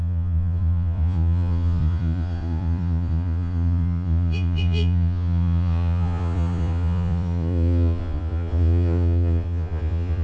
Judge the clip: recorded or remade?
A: remade